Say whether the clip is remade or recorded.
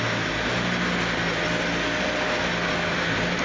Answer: recorded